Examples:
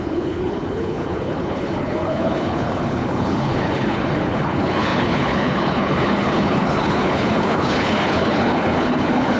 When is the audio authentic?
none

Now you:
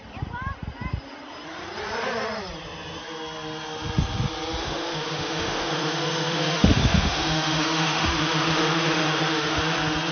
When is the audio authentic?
0.0-4.6; 9.6-10.1

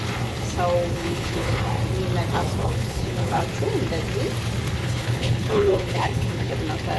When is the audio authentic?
0.0-0.9; 1.6-2.6; 3.4-4.8; 6.5-7.0

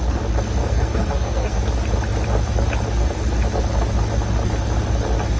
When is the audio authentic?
0.0-0.6; 1.6-5.4

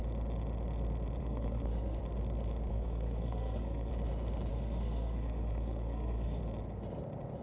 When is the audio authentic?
0.0-1.2; 2.0-2.7; 3.9-4.5; 6.4-7.4

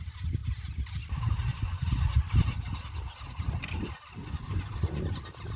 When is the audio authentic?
0.0-1.5; 2.2-4.2; 5.0-5.6

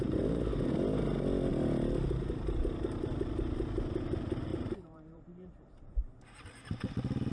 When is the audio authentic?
0.0-4.5; 5.9-7.3